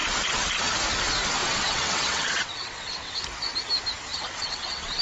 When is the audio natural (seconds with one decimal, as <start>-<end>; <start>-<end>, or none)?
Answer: 0.0-1.4; 3.2-4.1